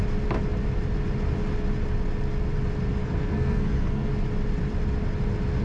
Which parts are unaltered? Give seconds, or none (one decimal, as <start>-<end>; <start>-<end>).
0.0-3.0; 4.1-5.6